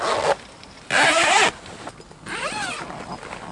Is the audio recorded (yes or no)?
yes